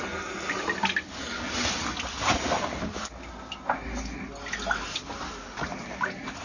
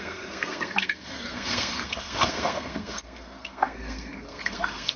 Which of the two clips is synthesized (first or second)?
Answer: second